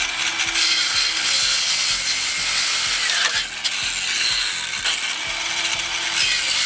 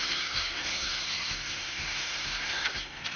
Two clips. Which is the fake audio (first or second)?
second